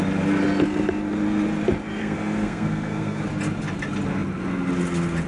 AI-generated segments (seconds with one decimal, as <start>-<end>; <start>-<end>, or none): 2.0-3.2